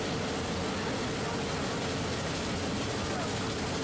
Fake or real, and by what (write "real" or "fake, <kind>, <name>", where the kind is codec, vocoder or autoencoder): real